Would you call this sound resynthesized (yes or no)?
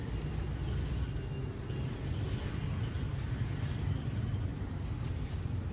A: no